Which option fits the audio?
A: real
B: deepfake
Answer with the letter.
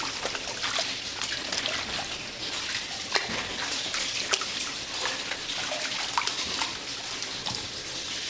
A